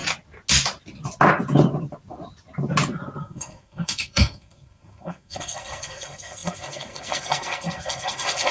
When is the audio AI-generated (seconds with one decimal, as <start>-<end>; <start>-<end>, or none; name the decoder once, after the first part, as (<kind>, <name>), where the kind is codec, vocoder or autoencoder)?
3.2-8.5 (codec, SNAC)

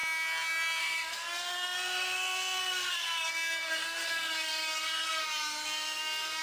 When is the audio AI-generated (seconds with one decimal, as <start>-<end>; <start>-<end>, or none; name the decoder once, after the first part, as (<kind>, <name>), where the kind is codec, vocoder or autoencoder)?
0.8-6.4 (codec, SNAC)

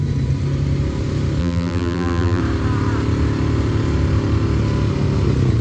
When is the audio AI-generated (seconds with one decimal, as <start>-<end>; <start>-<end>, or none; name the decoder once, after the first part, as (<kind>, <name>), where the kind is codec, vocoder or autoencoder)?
1.4-2.4 (vocoder, BigVGAN v2)

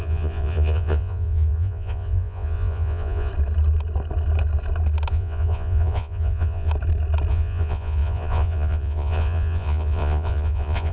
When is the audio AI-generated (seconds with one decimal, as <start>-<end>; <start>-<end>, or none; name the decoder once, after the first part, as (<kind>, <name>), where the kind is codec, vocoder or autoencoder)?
0.0-3.3 (vocoder, Vocos); 5.1-6.7; 7.3-10.9

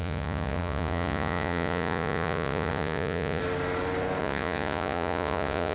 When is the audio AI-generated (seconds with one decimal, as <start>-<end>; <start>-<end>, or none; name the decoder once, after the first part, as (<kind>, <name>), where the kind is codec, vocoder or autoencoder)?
0.0-3.4 (vocoder, Vocos); 4.2-5.7

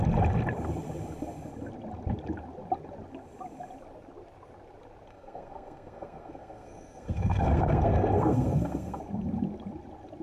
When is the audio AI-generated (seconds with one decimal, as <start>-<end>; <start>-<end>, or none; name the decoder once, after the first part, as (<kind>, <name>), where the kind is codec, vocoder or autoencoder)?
5.1-9.0 (codec, SNAC)

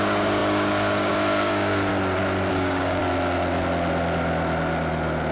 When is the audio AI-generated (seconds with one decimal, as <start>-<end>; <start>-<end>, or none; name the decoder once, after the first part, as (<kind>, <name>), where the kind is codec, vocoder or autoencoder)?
0.0-1.9 (codec, DAC); 2.5-3.0

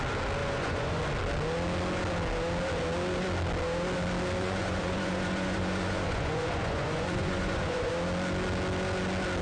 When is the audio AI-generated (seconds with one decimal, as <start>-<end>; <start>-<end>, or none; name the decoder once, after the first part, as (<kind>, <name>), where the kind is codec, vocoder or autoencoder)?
0.4-1.0 (vocoder, Vocos); 4.4-7.9